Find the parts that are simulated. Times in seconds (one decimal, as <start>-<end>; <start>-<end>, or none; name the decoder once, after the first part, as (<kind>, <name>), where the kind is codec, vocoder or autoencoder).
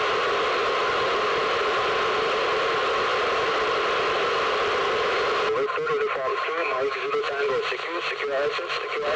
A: 6.3-7.1 (codec, DAC)